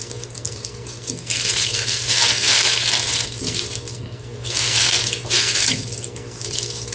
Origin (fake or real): fake